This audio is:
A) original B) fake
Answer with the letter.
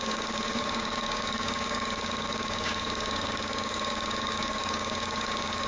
B